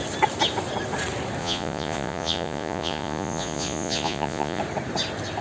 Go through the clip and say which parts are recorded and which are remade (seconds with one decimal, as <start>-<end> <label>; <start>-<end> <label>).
0.0-1.4 recorded; 1.4-4.6 remade; 4.6-5.4 recorded